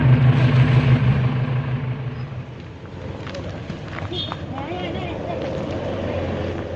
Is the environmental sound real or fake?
real